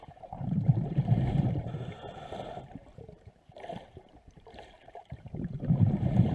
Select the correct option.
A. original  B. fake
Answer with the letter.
B